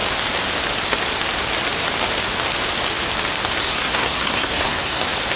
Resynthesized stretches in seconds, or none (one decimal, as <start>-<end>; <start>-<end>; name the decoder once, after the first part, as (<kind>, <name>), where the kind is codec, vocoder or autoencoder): 3.6-5.0 (codec, SNAC)